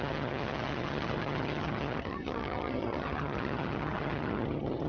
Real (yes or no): no